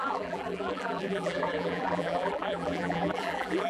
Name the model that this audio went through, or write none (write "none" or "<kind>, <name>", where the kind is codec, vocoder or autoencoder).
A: vocoder, BigVGAN v2